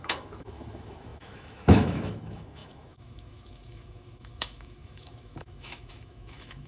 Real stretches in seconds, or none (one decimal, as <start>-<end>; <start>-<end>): none